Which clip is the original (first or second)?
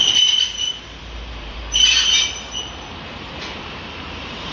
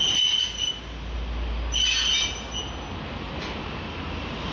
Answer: second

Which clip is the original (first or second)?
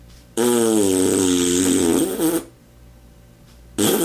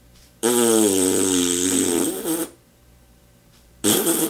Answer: first